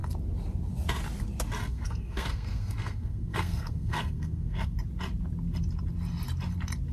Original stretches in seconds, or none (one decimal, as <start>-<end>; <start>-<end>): 0.0-1.6; 4.8-6.9